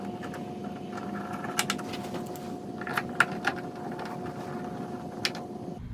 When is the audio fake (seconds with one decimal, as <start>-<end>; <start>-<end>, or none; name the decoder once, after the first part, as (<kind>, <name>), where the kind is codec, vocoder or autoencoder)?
none